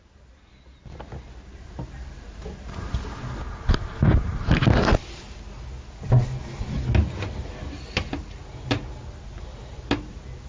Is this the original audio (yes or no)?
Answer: yes